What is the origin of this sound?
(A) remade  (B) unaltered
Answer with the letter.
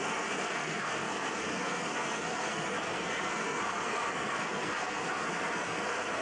A